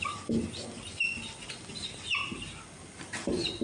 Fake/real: real